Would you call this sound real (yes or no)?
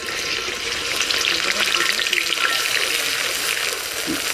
yes